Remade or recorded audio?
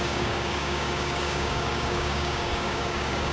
remade